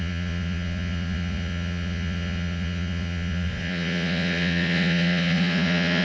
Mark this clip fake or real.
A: fake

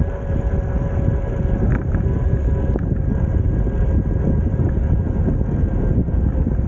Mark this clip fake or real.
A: real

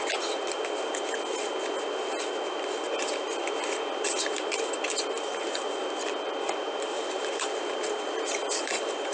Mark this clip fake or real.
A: real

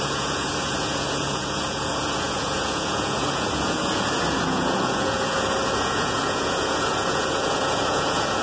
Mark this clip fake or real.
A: fake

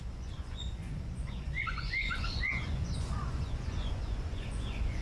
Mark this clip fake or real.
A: fake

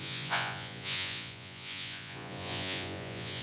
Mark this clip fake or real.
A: fake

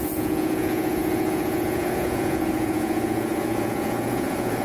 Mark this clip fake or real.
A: fake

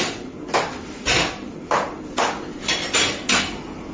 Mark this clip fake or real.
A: real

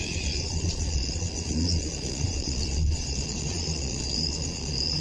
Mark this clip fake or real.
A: fake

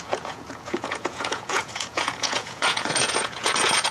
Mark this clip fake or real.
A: fake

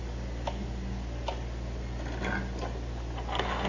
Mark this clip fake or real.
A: real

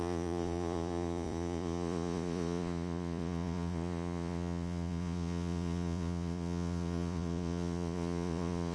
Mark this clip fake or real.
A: fake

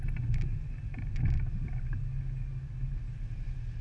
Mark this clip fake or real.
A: real